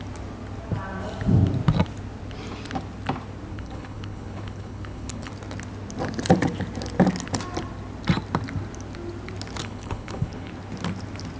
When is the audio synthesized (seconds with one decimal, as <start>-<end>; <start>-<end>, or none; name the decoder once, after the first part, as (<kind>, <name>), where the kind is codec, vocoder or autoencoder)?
3.5-5.3 (codec, HILCodec); 9.6-10.5